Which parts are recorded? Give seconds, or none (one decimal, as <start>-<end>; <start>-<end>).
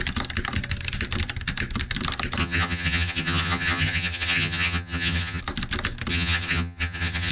0.0-2.4; 5.4-6.1